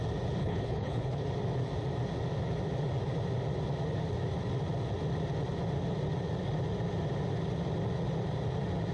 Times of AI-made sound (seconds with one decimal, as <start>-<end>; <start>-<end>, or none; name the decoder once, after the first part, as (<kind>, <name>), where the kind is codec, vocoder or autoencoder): 0.4-1.2 (codec, HILCodec)